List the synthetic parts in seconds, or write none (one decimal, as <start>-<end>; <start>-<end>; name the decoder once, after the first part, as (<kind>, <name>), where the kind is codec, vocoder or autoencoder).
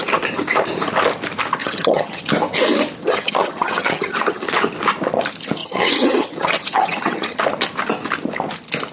1.6-2.2 (vocoder, HiFi-GAN); 3.0-4.5; 5.6-7.4